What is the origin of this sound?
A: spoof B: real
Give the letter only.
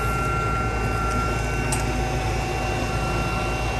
B